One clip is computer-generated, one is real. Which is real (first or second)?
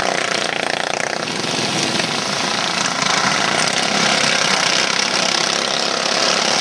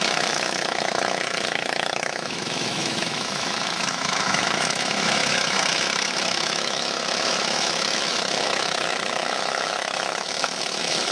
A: first